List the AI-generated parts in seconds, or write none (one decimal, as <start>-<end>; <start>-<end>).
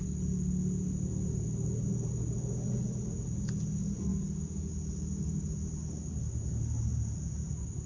none